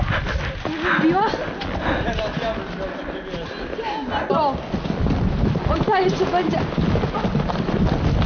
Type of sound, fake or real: real